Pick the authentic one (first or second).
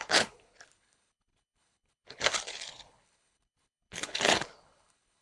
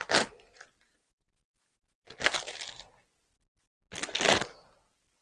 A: second